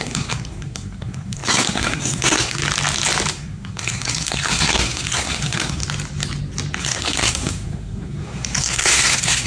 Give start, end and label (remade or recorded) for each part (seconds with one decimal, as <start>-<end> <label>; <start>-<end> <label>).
0.0-2.6 remade; 2.6-3.3 recorded; 3.3-5.8 remade; 5.8-6.8 recorded; 6.8-9.5 remade